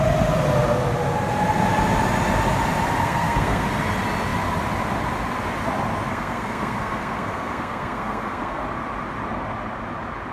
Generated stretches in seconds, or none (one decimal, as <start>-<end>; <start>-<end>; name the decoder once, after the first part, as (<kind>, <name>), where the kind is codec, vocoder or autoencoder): 3.0-3.7 (codec, SNAC); 6.1-8.6